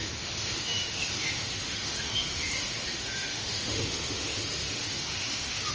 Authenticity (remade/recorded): remade